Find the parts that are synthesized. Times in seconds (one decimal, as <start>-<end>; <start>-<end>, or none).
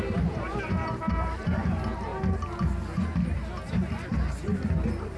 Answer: 0.0-2.1